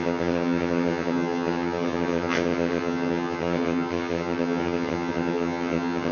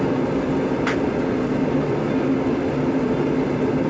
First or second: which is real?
second